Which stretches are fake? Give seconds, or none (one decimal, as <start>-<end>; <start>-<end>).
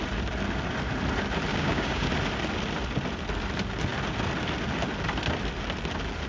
1.5-2.1